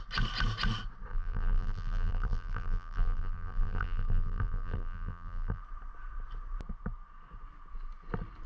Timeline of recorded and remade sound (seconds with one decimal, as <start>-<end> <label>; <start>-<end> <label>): 0.0-1.1 recorded; 1.1-5.6 remade; 5.6-8.5 recorded